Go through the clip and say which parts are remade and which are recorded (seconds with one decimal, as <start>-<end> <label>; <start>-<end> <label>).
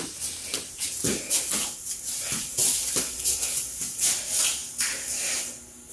0.0-5.9 recorded